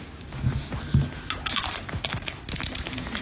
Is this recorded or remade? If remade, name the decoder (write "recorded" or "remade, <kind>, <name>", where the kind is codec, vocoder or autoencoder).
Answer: recorded